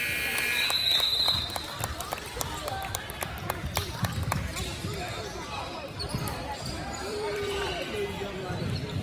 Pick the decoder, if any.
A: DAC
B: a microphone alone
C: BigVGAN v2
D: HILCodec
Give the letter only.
C